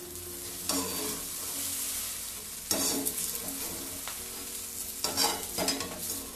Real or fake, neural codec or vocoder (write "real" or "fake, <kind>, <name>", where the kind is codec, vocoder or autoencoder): real